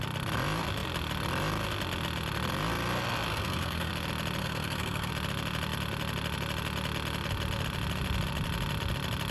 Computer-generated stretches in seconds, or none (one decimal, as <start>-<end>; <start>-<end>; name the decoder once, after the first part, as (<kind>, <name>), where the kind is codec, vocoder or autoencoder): 3.3-3.9 (codec, SNAC); 4.4-5.1